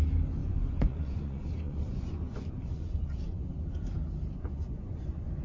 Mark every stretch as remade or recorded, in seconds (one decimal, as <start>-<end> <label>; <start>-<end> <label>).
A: 0.0-0.4 recorded; 0.4-3.6 remade; 3.6-4.4 recorded; 4.4-5.4 remade